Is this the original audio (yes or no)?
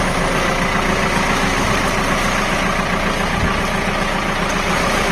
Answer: yes